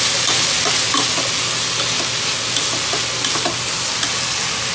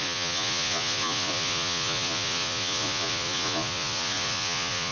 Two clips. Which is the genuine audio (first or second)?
first